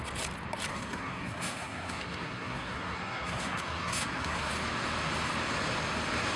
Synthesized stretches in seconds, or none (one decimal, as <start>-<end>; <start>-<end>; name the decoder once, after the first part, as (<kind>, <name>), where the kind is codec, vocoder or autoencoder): 0.7-4.5 (codec, SNAC)